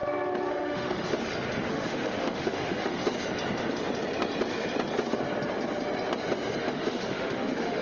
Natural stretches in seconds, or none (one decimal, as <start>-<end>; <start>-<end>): 0.0-0.5; 1.1-1.7; 3.0-6.6